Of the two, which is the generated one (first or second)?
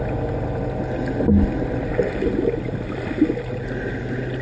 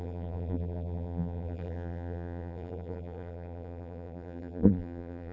second